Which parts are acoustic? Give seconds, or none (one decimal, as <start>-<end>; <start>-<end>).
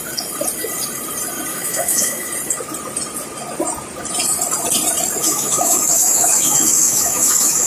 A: 0.0-1.5; 2.3-5.2